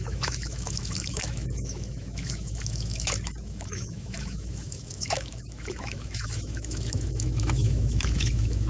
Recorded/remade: remade